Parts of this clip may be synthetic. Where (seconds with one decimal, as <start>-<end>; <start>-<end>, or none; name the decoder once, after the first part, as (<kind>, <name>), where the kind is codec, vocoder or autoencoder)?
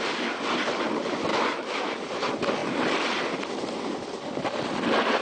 1.3-2.0 (autoencoder, DAC-VAE)